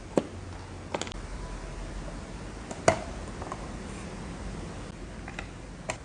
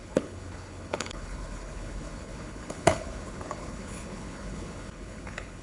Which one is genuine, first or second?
first